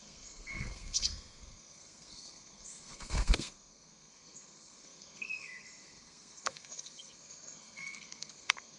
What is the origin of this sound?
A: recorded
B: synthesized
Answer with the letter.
B